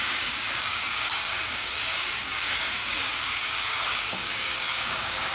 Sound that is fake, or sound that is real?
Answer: fake